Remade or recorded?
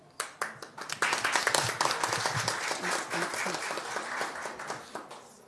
recorded